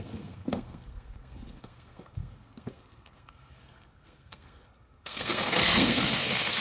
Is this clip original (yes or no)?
no